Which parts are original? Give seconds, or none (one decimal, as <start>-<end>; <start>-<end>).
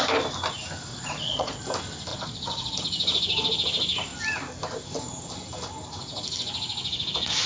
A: 0.0-0.9; 1.6-2.1; 2.8-7.5